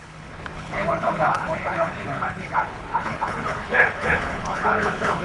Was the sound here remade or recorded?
remade